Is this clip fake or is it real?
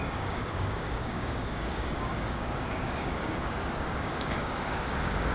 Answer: fake